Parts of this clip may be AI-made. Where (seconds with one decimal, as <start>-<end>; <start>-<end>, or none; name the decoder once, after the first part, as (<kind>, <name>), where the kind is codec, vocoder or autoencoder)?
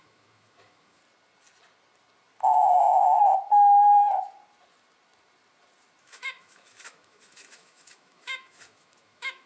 0.0-1.0 (autoencoder, DAC-VAE); 6.0-9.5